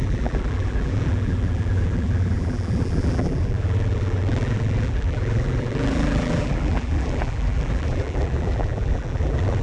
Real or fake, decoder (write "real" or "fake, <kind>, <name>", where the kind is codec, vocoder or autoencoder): fake, vocoder, BigVGAN v2